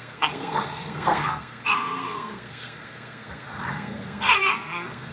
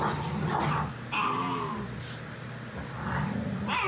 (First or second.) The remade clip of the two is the first